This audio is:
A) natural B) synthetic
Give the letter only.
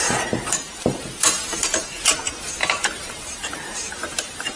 B